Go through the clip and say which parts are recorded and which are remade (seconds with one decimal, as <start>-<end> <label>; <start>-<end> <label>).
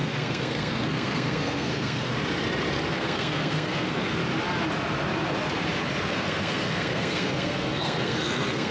0.0-2.1 remade; 2.1-2.9 recorded; 2.9-4.2 remade; 4.2-6.1 recorded; 6.1-8.7 remade